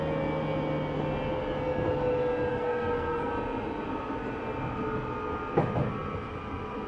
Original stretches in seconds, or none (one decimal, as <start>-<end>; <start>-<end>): 0.0-2.5; 3.3-6.9